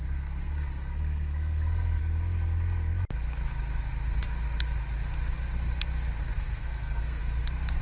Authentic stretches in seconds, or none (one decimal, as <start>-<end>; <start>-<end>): 2.0-6.4; 7.2-7.8